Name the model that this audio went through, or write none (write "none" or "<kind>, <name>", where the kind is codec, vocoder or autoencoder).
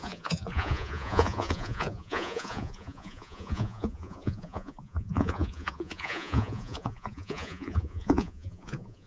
vocoder, Vocos